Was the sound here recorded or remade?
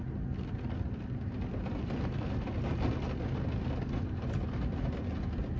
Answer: recorded